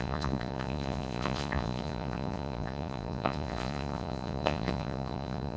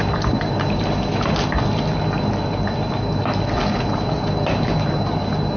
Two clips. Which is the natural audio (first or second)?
second